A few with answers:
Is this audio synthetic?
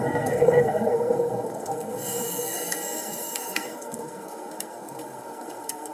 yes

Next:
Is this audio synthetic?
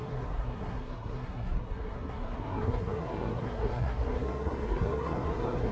yes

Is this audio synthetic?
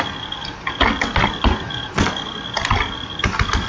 no